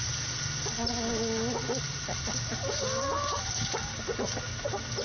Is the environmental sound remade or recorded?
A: recorded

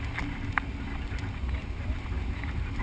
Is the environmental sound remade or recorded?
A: recorded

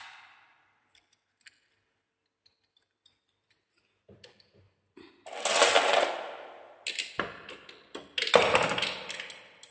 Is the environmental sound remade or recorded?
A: recorded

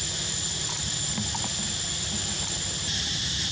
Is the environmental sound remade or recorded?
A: recorded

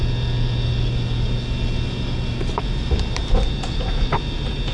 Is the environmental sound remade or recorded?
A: recorded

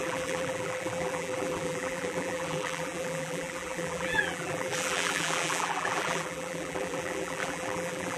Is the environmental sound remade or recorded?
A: remade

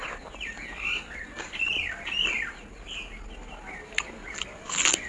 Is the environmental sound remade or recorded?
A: recorded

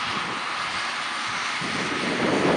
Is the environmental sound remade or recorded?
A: recorded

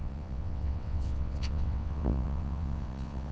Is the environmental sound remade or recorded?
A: remade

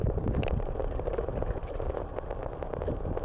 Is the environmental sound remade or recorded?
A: recorded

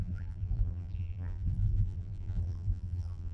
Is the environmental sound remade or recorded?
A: remade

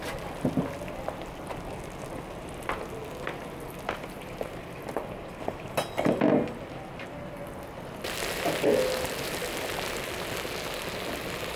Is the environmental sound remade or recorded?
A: recorded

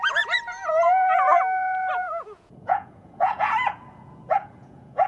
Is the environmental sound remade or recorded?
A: remade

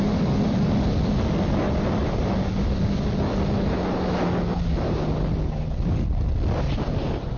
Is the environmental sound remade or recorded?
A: recorded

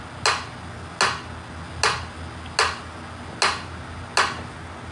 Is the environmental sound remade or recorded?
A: recorded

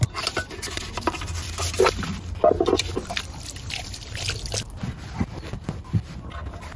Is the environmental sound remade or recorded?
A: recorded